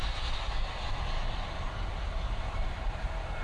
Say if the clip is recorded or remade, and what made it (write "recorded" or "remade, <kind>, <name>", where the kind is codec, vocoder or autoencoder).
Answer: recorded